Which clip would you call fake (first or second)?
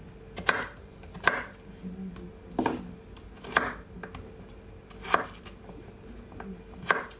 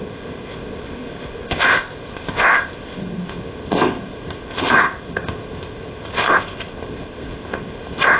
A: second